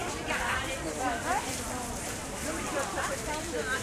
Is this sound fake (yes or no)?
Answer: yes